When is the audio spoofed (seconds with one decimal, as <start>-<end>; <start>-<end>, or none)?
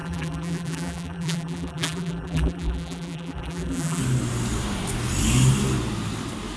0.0-4.0